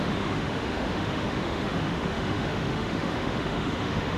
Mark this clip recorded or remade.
remade